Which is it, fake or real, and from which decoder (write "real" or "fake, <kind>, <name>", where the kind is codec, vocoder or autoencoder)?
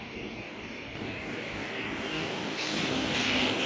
fake, codec, DAC